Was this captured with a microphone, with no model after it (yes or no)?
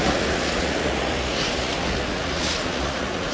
no